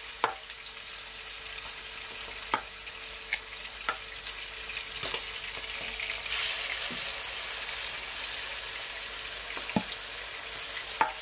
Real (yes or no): yes